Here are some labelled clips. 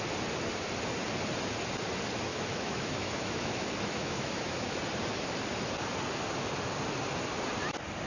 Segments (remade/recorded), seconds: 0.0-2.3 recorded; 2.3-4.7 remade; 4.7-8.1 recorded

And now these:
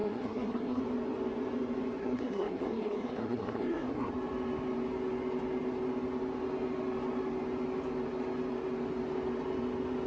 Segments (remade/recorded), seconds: 0.0-0.8 remade; 0.8-2.0 recorded; 2.0-4.1 remade; 4.1-10.1 recorded

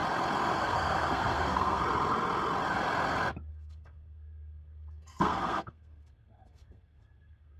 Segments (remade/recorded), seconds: 0.0-0.6 recorded; 0.6-1.8 remade; 1.8-3.5 recorded; 3.5-7.6 remade

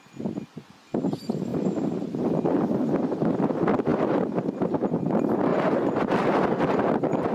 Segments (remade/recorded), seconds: 0.0-1.5 recorded; 1.5-2.2 remade; 2.2-5.5 recorded; 5.5-7.3 remade

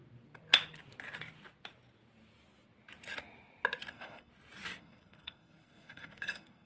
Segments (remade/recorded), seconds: 0.0-3.9 recorded; 3.9-4.3 remade; 4.3-4.8 recorded; 4.8-6.7 remade

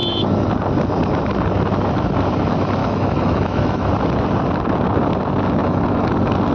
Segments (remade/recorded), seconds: 0.0-0.5 remade; 0.5-2.8 recorded; 2.8-3.9 remade; 3.9-5.6 recorded; 5.6-6.1 remade; 6.1-6.5 recorded